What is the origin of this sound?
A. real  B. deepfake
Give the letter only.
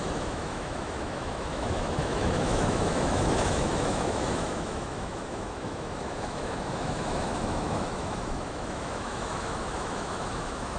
B